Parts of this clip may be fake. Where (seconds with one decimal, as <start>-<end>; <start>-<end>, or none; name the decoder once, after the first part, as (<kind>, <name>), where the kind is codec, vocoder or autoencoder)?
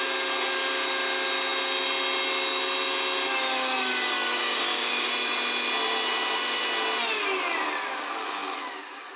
3.5-5.1 (codec, DAC)